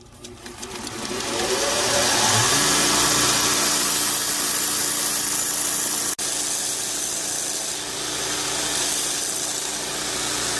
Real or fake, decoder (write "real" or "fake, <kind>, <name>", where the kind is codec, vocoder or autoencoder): real